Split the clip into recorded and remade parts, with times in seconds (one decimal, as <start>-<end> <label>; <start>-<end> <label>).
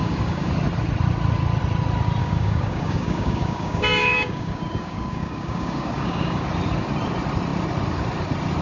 0.0-0.5 remade; 0.5-2.2 recorded; 2.2-6.5 remade; 6.5-8.6 recorded